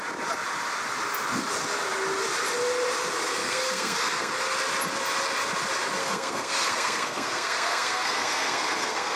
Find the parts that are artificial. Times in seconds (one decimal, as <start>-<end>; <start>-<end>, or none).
3.4-4.3; 6.0-9.2